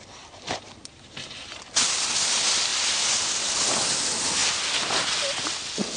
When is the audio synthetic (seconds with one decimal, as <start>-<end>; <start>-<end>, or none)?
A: none